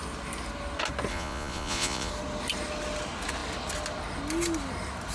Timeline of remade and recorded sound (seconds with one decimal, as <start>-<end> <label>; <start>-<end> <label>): 0.0-1.1 recorded; 1.1-2.1 remade; 2.1-5.1 recorded